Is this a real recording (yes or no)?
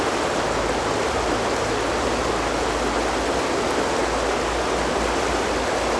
yes